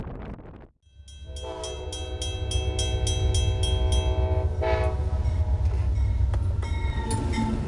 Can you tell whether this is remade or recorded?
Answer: recorded